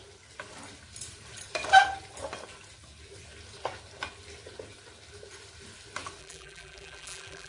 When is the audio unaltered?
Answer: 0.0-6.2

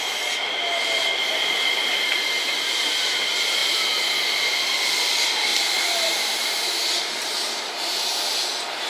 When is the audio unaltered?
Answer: 0.0-5.5; 8.0-8.9

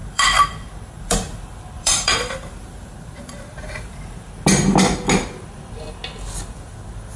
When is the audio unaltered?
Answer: 4.3-7.2

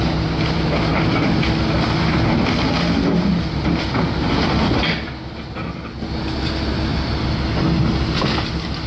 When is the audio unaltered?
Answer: 0.0-8.9

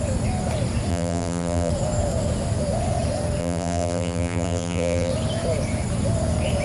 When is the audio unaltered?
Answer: 0.0-0.9; 1.7-3.4; 5.1-6.6

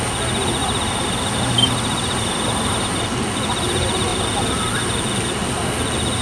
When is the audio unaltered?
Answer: 0.0-0.6; 2.8-6.2

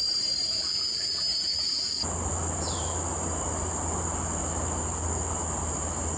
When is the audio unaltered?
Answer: none